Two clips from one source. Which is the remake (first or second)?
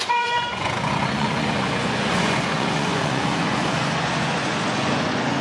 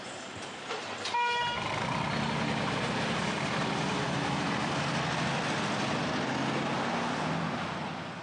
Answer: first